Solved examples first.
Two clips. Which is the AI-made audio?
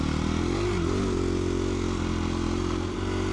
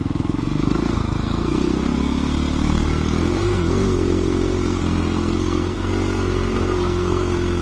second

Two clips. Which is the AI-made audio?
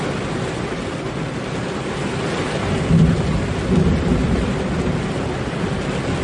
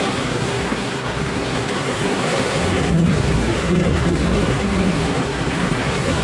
second